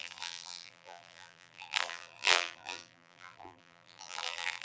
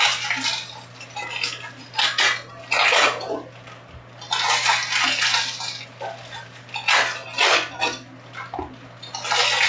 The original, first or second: second